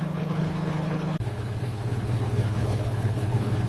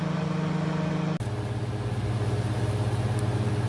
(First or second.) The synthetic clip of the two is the first